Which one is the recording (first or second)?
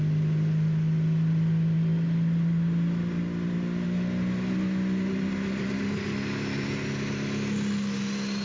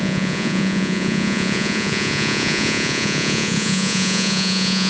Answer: first